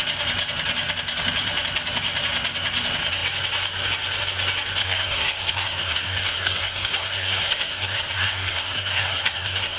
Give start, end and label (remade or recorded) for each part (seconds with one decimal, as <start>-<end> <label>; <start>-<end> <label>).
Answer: 0.0-4.8 recorded; 4.8-9.8 remade